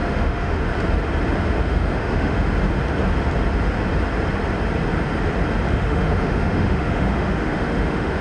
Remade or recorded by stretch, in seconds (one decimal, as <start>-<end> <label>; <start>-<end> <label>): 0.0-0.7 remade; 0.7-1.6 recorded; 1.6-2.5 remade; 2.5-5.7 recorded; 5.7-8.2 remade